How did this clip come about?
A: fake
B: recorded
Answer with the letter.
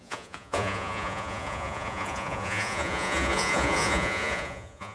A